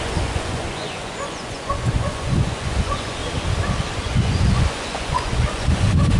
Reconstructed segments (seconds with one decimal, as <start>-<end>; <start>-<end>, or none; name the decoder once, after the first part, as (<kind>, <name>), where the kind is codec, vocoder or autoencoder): 0.0-3.2 (vocoder, Vocos); 3.9-6.2